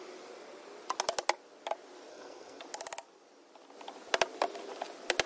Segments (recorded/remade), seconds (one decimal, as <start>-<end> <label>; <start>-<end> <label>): 0.0-2.1 recorded; 2.1-2.6 remade; 2.6-5.3 recorded